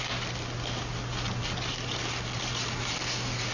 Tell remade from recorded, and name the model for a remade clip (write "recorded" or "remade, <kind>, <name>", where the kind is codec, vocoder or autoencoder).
recorded